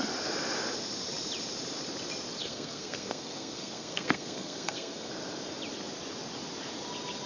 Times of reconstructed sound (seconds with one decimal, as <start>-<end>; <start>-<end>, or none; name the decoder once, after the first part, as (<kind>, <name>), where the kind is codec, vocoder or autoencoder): 2.4-5.1 (codec, SNAC)